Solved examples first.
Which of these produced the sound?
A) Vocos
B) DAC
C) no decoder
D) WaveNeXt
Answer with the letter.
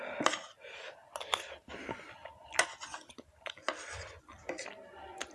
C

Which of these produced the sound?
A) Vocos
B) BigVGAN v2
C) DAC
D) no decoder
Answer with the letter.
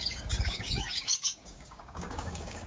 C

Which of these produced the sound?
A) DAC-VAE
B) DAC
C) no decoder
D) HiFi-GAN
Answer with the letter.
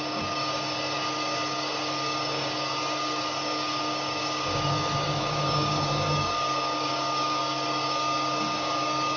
B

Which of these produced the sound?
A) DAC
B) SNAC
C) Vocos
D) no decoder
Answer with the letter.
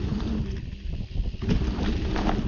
D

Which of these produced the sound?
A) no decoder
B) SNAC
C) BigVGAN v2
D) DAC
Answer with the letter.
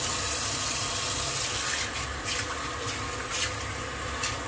A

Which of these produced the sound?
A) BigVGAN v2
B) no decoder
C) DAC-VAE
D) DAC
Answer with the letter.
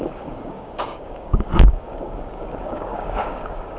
D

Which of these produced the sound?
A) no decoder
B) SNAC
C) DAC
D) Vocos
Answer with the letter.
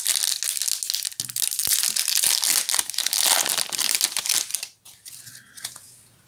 A